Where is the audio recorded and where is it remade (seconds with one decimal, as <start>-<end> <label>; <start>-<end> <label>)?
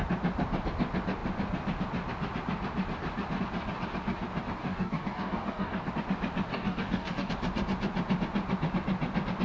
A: 0.0-4.6 recorded; 4.6-5.9 remade; 5.9-6.5 recorded; 6.5-7.3 remade; 7.3-9.4 recorded